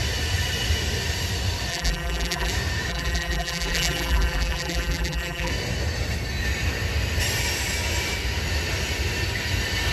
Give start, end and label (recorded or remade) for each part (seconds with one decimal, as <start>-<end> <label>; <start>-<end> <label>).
0.0-1.7 recorded; 1.7-2.5 remade; 2.5-2.9 recorded; 2.9-5.5 remade; 5.5-9.9 recorded